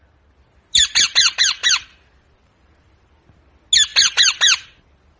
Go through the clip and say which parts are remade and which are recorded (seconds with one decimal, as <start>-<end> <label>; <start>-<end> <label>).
0.0-1.6 recorded; 1.6-3.1 remade; 3.1-5.2 recorded